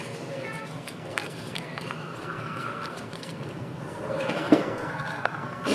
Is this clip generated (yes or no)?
yes